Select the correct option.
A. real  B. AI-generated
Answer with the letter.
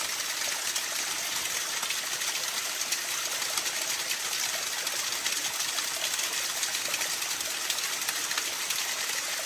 A